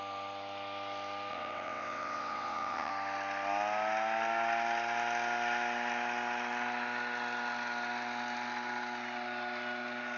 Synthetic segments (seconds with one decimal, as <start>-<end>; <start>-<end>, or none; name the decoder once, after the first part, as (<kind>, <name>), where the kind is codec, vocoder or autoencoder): 1.3-2.9 (vocoder, WaveNeXt)

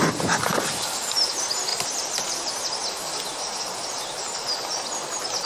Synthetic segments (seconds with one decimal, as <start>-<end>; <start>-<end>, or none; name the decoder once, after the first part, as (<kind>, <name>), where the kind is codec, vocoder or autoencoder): none

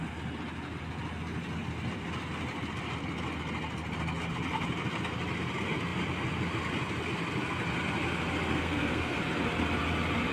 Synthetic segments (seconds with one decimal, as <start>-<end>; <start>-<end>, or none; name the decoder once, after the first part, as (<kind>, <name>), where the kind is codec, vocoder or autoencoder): 8.5-9.2 (codec, SNAC)

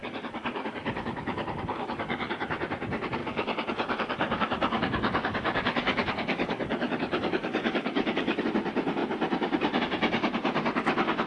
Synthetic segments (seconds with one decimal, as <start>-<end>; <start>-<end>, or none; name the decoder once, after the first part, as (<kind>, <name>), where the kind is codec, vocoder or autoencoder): 0.0-2.5 (codec, DAC); 3.2-8.4